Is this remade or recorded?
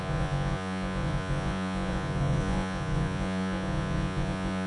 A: remade